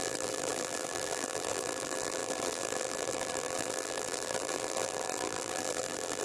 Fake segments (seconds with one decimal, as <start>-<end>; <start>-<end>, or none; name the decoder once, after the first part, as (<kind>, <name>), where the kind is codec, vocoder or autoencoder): 0.0-6.2 (vocoder, BigVGAN v2)